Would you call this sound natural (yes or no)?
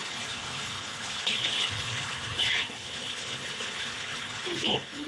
no